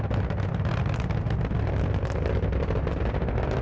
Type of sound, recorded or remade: recorded